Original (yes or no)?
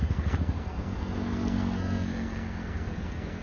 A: no